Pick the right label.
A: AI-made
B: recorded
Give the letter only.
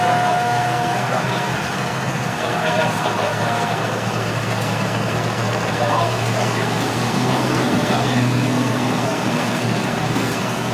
A